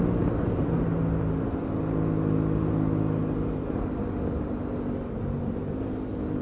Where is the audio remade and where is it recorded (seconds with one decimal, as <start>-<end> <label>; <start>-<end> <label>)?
0.0-6.4 recorded